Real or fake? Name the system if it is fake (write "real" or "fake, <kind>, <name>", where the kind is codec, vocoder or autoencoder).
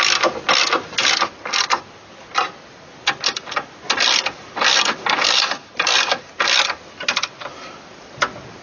real